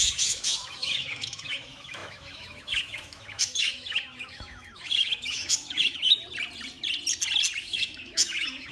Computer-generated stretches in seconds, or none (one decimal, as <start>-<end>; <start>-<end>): 0.0-6.2; 7.6-8.7

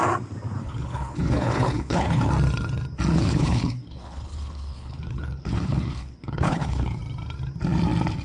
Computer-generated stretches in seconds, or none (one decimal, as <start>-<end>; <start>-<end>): 0.6-2.3; 3.1-7.0

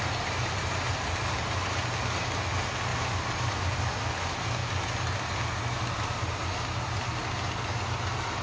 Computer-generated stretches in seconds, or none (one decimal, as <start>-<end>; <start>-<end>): none

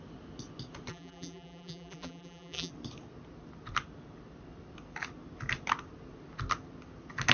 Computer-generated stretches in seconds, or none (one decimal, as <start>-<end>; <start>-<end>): 0.9-2.7

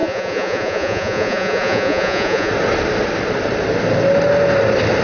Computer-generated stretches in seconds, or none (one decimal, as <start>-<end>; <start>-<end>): 0.0-2.5

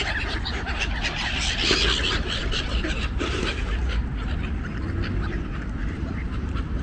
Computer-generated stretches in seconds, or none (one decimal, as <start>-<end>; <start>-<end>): 2.4-3.8; 5.8-6.8

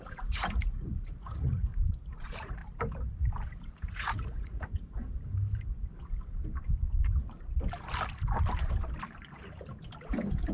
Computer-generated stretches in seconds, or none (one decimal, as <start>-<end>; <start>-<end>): 0.0-1.7; 2.2-2.6; 3.9-5.0